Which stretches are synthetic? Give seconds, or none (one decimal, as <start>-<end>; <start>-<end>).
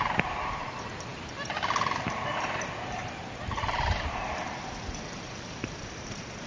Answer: 3.0-6.0